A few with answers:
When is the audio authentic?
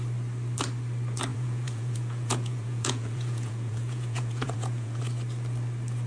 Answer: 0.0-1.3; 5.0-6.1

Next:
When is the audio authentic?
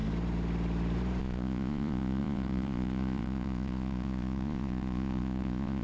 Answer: 0.0-1.2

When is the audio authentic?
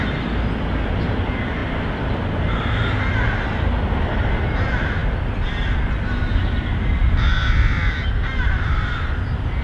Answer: 0.0-9.6